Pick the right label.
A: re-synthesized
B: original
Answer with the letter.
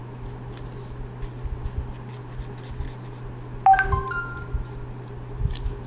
B